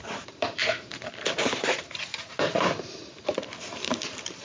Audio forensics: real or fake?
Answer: fake